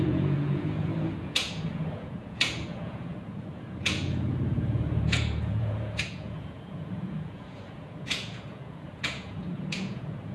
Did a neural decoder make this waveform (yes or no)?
yes